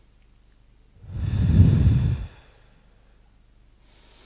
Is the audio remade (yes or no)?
no